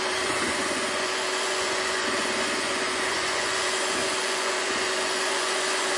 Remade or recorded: remade